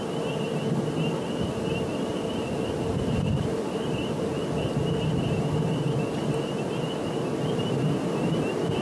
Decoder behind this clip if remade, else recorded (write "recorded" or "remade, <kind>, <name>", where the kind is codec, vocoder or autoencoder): recorded